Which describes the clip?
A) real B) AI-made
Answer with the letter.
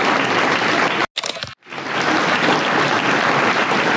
A